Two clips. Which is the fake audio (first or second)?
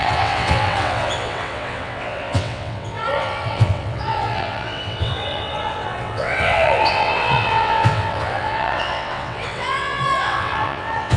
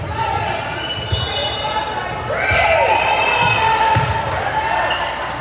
first